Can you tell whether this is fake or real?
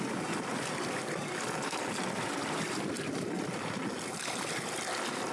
real